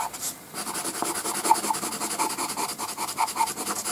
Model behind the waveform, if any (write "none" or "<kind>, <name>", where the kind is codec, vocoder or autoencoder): none